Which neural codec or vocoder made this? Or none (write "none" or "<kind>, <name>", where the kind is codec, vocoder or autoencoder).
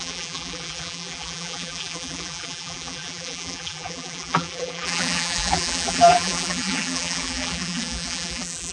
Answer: vocoder, BigVGAN v2